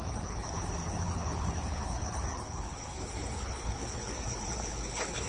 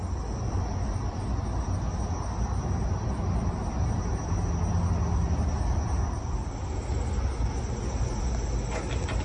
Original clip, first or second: second